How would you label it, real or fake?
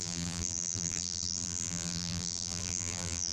fake